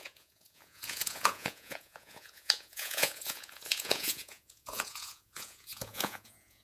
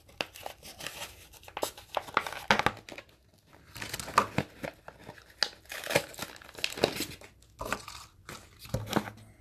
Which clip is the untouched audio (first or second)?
second